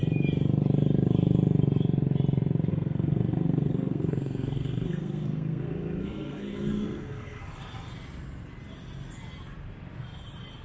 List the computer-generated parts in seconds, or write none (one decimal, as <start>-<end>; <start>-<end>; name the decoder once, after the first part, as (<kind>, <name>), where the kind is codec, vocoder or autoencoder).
2.7-7.4 (codec, SNAC)